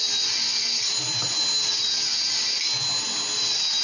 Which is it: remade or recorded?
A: recorded